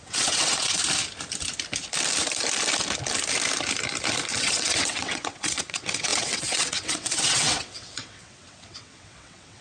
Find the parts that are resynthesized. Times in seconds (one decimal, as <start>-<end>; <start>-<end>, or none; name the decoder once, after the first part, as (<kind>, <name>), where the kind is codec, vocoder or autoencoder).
0.0-0.8 (vocoder, WaveNeXt); 4.4-9.6